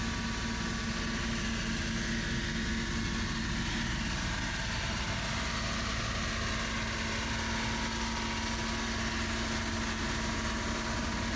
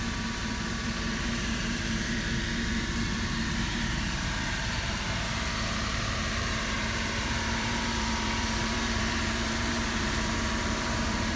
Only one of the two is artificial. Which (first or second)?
second